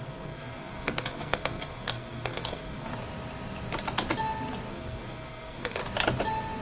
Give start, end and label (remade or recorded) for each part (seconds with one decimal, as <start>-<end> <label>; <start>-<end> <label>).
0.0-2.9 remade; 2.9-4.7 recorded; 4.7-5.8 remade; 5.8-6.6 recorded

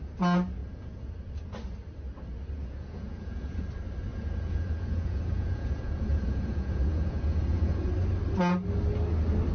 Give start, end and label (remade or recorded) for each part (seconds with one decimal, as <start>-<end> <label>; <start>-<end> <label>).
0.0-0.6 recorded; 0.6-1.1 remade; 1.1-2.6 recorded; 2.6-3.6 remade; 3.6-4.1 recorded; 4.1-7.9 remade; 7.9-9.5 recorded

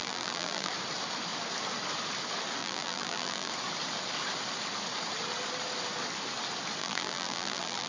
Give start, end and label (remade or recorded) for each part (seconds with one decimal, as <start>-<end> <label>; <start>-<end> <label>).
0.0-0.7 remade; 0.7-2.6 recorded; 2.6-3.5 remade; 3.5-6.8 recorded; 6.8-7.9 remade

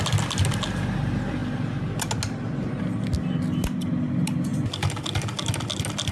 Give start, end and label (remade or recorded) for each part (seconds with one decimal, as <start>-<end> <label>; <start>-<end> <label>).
0.0-6.1 recorded

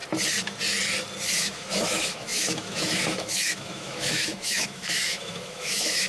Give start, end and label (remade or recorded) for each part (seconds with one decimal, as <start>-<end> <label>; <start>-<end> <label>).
0.0-1.3 recorded; 1.3-6.1 remade

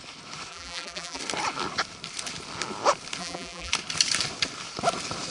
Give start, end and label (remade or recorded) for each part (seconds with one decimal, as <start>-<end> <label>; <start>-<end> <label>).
0.0-0.5 recorded; 0.5-1.2 remade; 1.2-3.2 recorded; 3.2-3.7 remade; 3.7-5.3 recorded

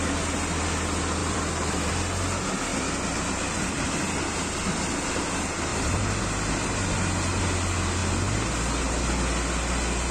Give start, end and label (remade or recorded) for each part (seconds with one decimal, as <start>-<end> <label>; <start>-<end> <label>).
0.0-1.2 recorded; 1.2-1.9 remade; 1.9-5.7 recorded; 5.7-6.2 remade; 6.2-10.1 recorded

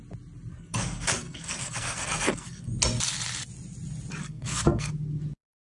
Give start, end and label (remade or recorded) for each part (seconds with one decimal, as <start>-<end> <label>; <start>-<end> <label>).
0.0-0.5 recorded; 0.5-2.7 remade; 2.7-4.2 recorded; 4.2-4.9 remade; 4.9-5.6 recorded